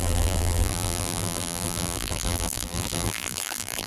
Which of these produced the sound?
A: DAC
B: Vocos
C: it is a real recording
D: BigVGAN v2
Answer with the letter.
D